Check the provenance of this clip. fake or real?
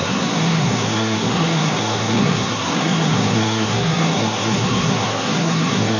fake